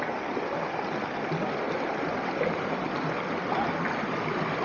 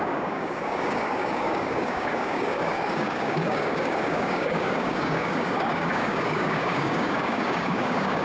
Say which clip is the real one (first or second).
first